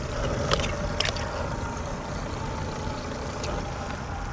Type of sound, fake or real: real